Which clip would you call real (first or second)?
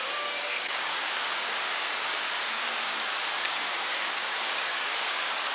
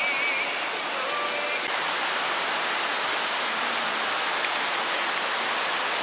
second